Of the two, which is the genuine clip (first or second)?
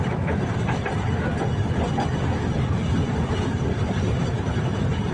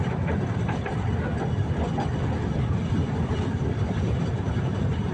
first